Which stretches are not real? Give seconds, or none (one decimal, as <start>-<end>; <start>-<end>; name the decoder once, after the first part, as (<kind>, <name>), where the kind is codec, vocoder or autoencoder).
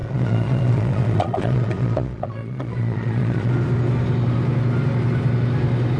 0.0-3.5 (vocoder, Vocos)